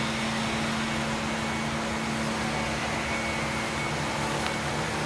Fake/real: real